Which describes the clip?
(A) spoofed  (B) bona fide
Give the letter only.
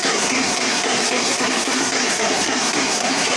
A